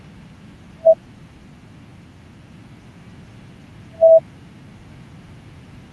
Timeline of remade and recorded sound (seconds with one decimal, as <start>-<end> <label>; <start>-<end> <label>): 0.0-5.9 recorded